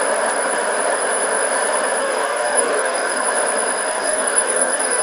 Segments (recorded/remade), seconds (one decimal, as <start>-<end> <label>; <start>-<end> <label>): 0.0-2.0 recorded; 2.0-3.2 remade; 3.2-3.9 recorded; 3.9-5.0 remade